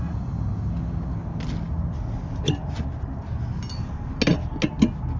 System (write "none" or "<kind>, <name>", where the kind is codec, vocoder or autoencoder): none